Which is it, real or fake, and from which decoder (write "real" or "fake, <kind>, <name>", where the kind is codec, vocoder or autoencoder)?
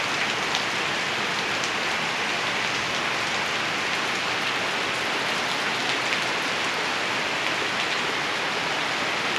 real